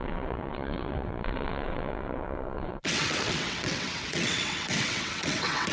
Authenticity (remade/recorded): remade